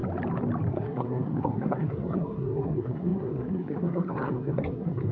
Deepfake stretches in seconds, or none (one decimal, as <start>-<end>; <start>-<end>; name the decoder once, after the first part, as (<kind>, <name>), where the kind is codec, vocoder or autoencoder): 0.7-5.1 (codec, SNAC)